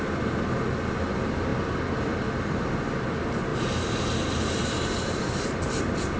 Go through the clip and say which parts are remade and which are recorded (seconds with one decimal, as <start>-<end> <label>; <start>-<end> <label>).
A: 0.0-3.5 recorded; 3.5-5.8 remade; 5.8-6.2 recorded